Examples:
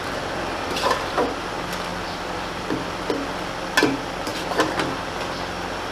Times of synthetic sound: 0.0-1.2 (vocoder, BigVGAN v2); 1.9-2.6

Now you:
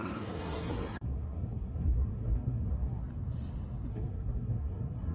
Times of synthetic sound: 0.0-3.0 (codec, SNAC); 3.9-5.1

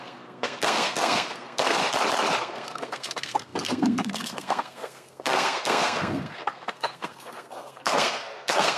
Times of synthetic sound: 0.0-1.8 (codec, SNAC); 2.4-8.8

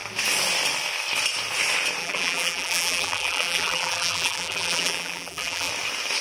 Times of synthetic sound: 2.0-5.7 (vocoder, BigVGAN v2)

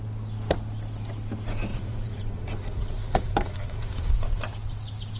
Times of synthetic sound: 1.7-4.1 (vocoder, Vocos)

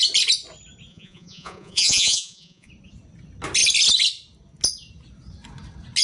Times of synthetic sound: 0.9-2.7 (vocoder, Vocos)

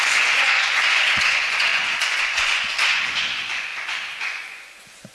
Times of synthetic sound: 0.0-5.1 (vocoder, Vocos)